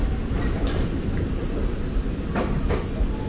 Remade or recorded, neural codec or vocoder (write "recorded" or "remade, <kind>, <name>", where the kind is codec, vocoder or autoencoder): recorded